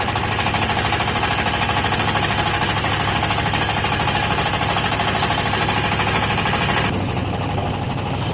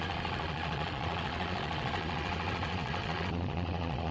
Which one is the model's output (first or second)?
second